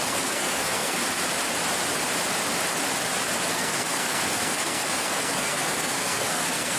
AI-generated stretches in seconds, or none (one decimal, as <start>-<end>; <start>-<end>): 0.0-1.0; 3.5-6.8

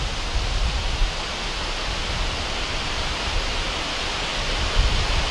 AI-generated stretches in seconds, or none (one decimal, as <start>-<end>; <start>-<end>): none